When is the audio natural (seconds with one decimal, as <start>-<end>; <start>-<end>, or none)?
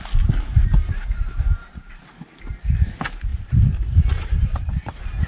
0.0-1.1; 2.4-3.3; 4.7-5.3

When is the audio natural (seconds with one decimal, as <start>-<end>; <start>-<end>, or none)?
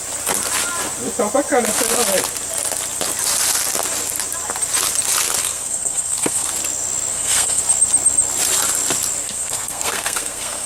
0.0-5.4; 6.5-7.1; 7.6-9.2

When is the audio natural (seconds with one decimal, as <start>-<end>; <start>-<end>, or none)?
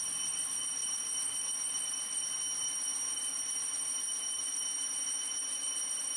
0.0-6.2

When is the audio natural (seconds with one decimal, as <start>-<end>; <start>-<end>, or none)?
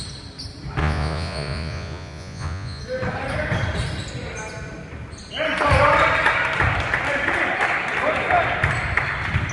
0.0-0.8; 2.8-9.5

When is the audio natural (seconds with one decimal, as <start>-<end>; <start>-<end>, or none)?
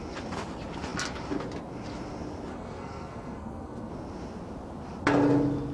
0.0-2.5; 3.9-5.7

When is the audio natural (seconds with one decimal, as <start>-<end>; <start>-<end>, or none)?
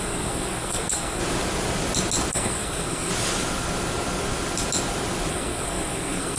1.2-2.3; 3.1-5.3